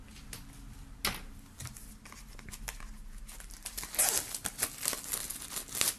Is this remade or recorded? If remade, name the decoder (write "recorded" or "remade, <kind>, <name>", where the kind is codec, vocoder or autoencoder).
recorded